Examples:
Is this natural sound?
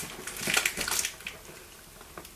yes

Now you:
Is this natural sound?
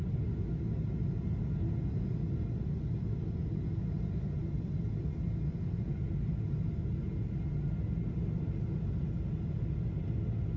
yes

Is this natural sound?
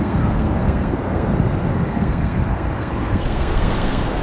no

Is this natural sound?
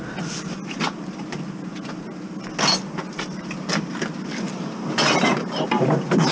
yes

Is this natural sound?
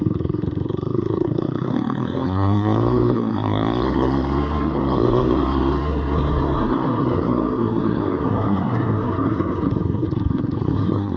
no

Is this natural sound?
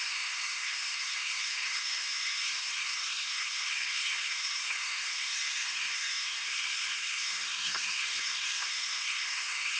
no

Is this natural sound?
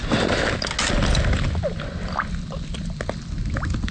yes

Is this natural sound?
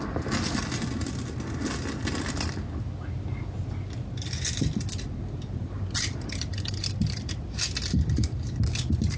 yes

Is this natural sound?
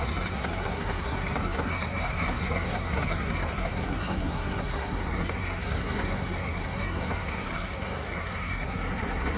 no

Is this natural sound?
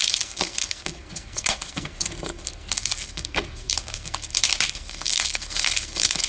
no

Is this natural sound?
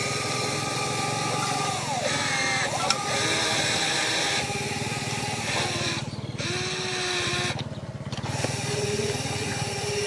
yes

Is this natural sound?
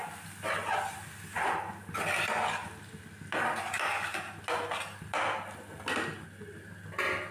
yes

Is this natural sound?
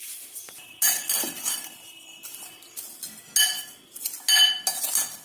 yes